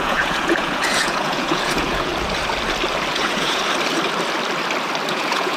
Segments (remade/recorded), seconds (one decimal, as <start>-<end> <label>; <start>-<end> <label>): 0.0-2.1 remade; 2.1-3.1 recorded; 3.1-3.6 remade; 3.6-5.1 recorded; 5.1-5.6 remade